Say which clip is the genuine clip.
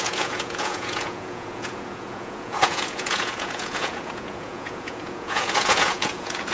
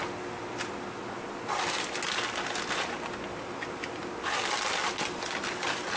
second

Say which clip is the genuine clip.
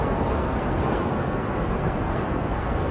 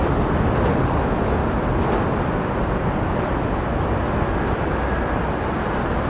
second